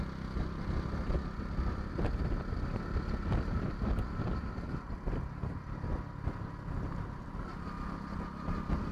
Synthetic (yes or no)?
no